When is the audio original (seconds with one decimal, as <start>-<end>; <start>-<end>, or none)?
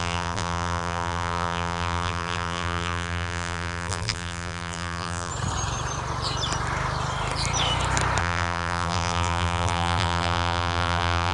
5.3-8.2